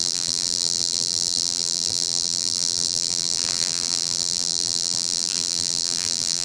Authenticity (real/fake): fake